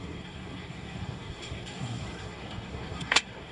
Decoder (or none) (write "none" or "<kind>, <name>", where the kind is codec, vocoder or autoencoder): codec, SNAC